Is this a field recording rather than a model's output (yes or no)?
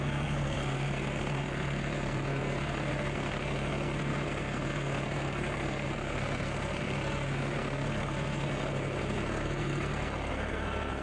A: no